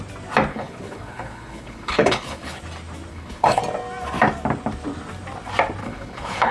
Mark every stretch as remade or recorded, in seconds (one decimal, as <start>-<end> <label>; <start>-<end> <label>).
0.0-0.5 recorded; 0.5-2.6 remade; 2.6-3.1 recorded; 3.1-3.6 remade; 3.6-5.8 recorded; 5.8-6.5 remade